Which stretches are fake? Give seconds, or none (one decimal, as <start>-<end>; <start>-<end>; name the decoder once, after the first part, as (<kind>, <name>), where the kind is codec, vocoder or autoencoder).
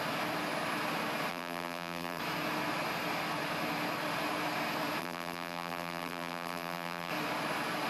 1.3-2.2 (vocoder, BigVGAN v2); 5.0-7.1